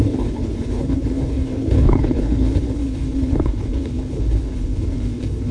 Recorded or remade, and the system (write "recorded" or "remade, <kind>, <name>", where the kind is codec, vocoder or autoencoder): remade, codec, HILCodec